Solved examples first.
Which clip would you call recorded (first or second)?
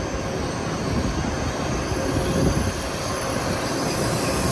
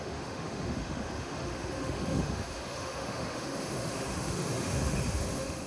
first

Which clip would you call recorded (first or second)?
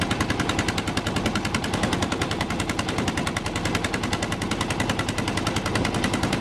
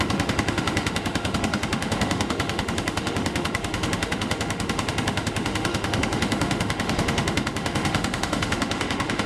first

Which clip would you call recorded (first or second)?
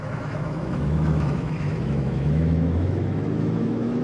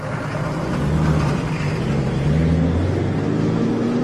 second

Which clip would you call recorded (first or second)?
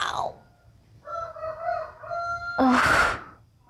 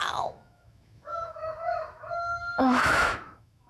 first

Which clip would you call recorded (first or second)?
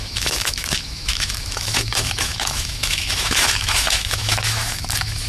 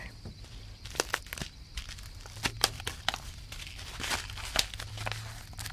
second